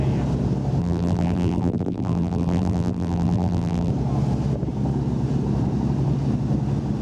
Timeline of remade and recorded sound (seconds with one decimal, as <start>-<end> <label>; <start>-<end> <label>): 0.0-0.8 recorded; 0.8-3.9 remade; 3.9-7.0 recorded